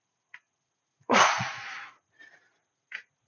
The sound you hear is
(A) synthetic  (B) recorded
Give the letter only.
A